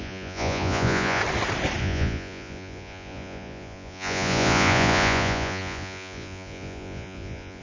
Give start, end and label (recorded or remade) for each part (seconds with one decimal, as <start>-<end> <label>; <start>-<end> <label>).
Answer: 0.0-1.2 remade; 1.2-1.8 recorded; 1.8-7.6 remade